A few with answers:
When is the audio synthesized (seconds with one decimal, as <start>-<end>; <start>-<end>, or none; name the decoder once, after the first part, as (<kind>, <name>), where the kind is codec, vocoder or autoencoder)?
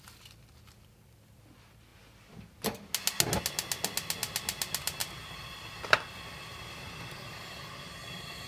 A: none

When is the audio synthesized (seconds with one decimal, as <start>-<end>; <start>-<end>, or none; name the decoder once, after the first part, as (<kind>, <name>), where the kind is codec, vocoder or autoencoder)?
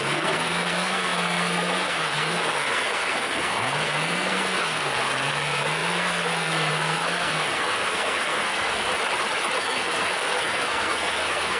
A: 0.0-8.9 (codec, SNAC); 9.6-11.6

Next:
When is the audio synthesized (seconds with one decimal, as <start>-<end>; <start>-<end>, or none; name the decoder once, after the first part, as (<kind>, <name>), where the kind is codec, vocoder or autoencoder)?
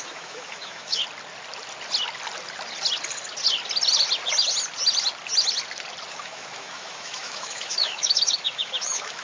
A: 0.0-1.0 (autoencoder, DAC-VAE); 6.1-9.2